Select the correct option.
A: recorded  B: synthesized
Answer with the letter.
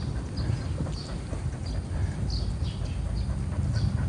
A